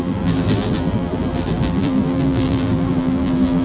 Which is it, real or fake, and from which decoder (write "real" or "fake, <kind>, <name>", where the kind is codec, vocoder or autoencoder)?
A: fake, vocoder, BigVGAN v2